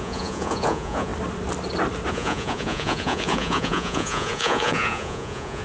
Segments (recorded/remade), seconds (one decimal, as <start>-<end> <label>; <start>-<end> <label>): 0.0-1.1 remade; 1.1-2.1 recorded; 2.1-5.6 remade